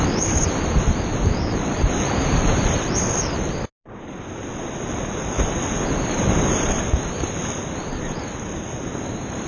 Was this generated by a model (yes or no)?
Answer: no